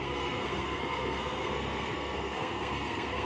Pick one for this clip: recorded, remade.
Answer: remade